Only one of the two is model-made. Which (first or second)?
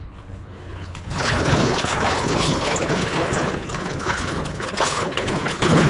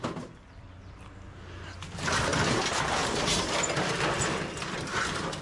first